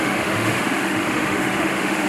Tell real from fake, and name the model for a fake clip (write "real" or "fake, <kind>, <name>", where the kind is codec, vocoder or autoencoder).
fake, autoencoder, DAC-VAE